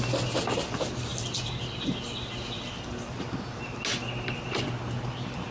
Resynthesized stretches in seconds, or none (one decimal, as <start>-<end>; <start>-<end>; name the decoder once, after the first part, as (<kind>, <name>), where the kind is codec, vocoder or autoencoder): none